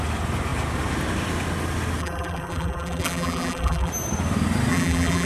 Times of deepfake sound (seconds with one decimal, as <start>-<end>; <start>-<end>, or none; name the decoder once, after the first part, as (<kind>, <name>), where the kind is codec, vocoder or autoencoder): 2.0-3.9 (vocoder, BigVGAN v2); 4.7-5.3